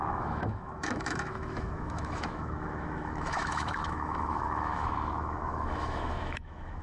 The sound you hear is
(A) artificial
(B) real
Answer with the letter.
A